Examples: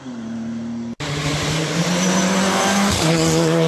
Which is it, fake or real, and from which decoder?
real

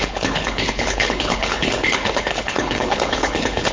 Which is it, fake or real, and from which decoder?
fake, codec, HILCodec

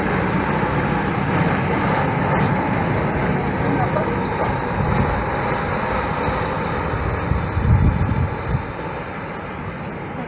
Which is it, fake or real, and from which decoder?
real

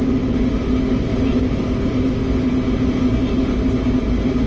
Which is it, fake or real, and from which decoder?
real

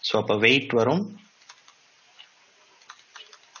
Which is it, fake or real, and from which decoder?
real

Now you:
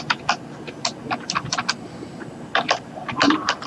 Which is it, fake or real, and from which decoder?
real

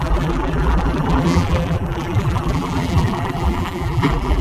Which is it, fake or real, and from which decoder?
fake, vocoder, BigVGAN v2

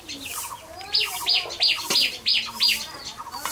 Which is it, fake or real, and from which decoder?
real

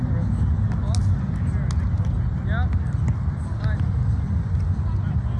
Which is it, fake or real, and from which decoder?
real